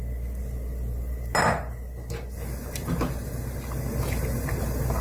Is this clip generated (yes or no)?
no